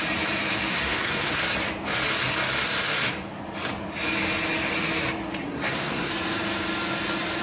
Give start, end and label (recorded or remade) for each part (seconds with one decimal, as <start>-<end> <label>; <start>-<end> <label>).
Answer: 0.0-0.7 recorded; 0.7-1.4 remade; 1.4-5.4 recorded; 5.4-6.1 remade; 6.1-7.4 recorded